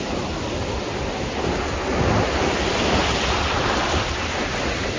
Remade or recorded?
recorded